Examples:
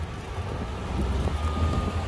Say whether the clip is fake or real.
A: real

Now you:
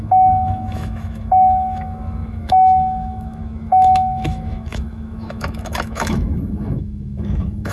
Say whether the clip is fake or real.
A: fake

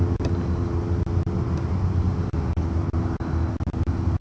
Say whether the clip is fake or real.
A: real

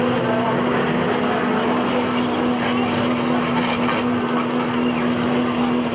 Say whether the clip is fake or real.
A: real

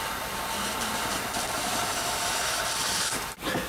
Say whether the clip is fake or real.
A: real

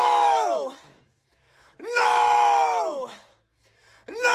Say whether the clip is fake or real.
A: fake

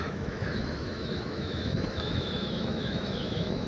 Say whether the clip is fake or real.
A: fake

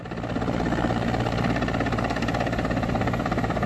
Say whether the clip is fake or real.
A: real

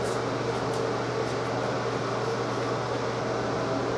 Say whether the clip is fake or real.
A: real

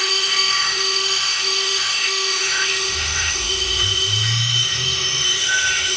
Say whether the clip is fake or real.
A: fake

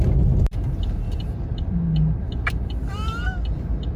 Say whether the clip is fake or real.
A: real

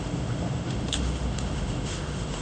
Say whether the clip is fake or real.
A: fake